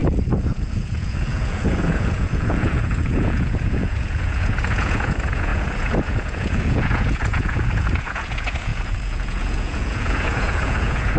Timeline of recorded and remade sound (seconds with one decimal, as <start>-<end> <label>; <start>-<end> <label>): 0.0-11.2 remade